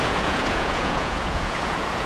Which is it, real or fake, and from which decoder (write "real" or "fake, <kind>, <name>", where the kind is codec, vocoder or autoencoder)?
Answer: fake, vocoder, Vocos